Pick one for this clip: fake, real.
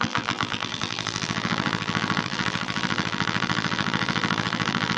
fake